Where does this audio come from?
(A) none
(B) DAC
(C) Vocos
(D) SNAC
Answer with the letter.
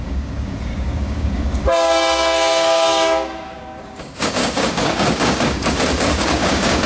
B